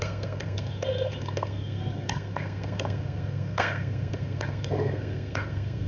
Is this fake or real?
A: fake